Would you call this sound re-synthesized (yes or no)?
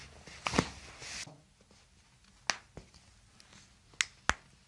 no